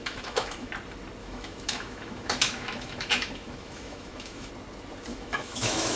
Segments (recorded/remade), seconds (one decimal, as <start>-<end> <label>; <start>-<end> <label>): 0.0-0.7 remade; 0.7-1.2 recorded; 1.2-4.5 remade; 4.5-5.1 recorded; 5.1-6.0 remade